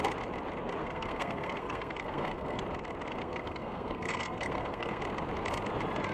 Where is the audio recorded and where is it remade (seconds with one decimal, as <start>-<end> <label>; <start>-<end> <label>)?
0.0-0.8 recorded; 0.8-2.6 remade; 2.6-3.1 recorded; 3.1-5.0 remade; 5.0-6.1 recorded